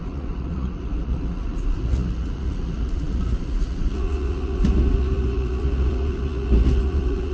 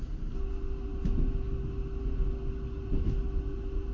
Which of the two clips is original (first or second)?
second